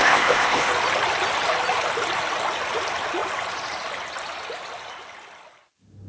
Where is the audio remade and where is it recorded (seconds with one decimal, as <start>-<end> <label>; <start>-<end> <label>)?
0.0-0.7 remade; 0.7-6.1 recorded

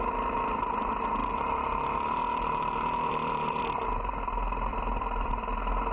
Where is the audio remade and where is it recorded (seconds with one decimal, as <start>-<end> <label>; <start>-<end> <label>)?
0.0-1.2 recorded; 1.2-3.6 remade; 3.6-4.7 recorded; 4.7-5.3 remade; 5.3-5.9 recorded

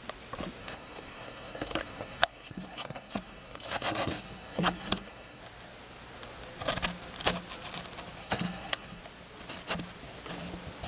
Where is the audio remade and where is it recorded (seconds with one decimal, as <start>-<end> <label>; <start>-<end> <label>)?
0.0-0.6 recorded; 0.6-5.4 remade; 5.4-8.2 recorded; 8.2-9.0 remade; 9.0-10.9 recorded